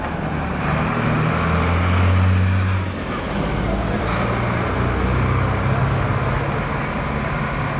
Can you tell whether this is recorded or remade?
recorded